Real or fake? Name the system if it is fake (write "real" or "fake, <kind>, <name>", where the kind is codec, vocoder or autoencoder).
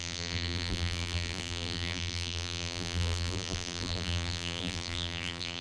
fake, vocoder, BigVGAN v2